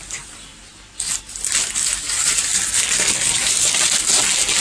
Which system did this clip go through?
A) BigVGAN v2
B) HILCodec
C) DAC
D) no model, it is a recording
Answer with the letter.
D